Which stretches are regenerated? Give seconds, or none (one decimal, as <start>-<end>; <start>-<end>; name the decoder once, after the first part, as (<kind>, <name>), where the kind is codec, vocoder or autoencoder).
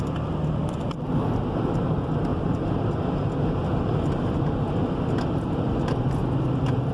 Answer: none